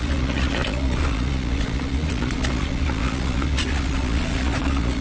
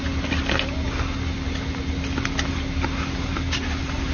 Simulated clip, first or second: first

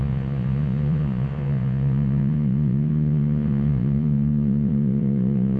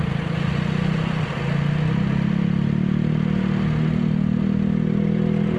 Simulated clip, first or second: first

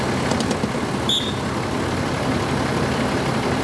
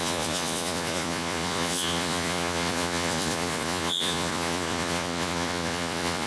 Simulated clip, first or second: second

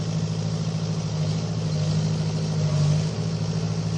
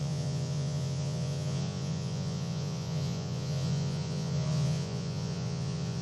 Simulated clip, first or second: second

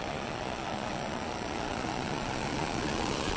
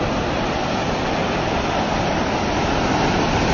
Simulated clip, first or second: first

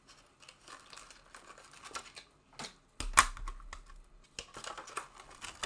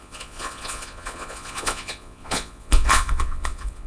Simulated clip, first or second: second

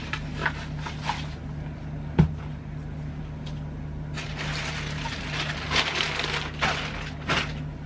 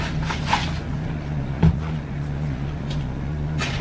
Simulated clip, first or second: second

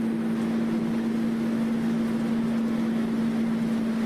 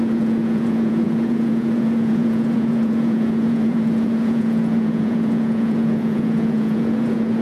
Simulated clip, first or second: second